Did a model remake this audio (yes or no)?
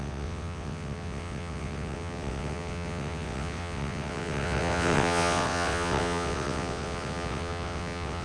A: yes